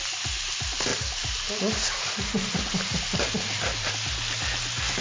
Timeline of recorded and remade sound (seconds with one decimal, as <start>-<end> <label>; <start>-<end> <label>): 0.0-0.9 recorded; 0.9-3.9 remade; 3.9-5.0 recorded